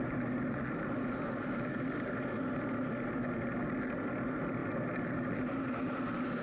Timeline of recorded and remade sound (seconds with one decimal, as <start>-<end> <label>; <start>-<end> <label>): 0.0-4.6 recorded; 4.6-5.4 remade; 5.4-6.4 recorded